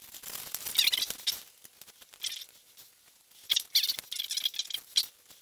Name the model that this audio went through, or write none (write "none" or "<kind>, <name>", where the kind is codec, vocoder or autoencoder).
none